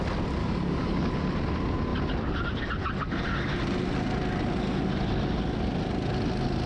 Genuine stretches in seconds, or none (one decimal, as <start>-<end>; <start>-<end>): 0.0-0.4; 1.1-6.7